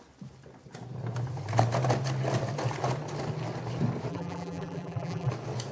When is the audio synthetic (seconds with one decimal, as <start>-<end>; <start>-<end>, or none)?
4.1-5.3